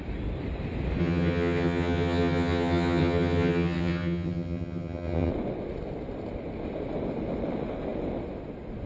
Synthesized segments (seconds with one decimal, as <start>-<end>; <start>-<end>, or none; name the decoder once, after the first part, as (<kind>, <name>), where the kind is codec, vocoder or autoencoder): 1.0-5.3 (vocoder, HiFi-GAN)